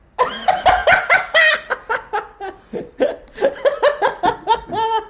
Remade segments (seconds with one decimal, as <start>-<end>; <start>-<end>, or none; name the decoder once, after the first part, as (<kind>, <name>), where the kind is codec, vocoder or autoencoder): none